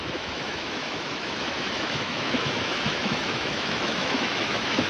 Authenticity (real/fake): fake